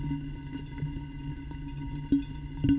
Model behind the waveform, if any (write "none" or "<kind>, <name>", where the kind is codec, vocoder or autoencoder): none